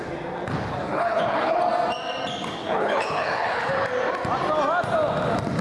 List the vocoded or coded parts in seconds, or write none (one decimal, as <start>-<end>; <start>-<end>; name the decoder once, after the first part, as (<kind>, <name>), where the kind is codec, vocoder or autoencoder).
0.9-1.6 (codec, HILCodec); 2.6-3.7

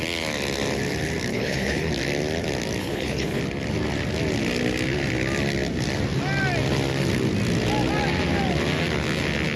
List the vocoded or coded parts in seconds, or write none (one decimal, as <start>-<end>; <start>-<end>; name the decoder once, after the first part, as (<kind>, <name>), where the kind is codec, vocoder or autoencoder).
1.3-1.9 (codec, HILCodec); 2.8-3.4

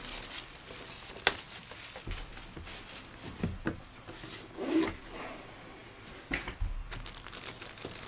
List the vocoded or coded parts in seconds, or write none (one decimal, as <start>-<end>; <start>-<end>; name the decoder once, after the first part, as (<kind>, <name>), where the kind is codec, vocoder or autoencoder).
none

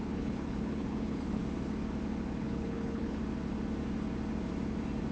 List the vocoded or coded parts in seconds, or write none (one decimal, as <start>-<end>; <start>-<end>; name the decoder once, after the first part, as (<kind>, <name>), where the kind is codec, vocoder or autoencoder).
0.0-1.4 (codec, HILCodec); 2.4-3.2